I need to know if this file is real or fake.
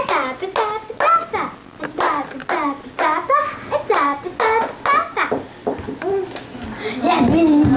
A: real